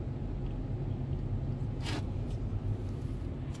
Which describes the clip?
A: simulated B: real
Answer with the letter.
B